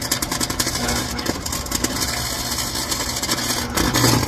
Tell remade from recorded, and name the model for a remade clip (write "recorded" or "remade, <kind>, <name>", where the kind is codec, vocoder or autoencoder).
recorded